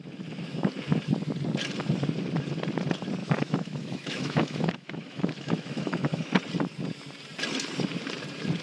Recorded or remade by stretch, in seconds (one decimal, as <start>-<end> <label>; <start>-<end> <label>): 0.0-3.2 recorded; 3.2-6.3 remade; 6.3-8.6 recorded